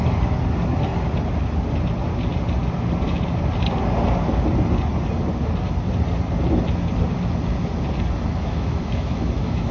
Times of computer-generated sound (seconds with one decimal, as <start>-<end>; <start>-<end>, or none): 8.3-9.7